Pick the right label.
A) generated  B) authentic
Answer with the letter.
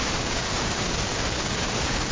A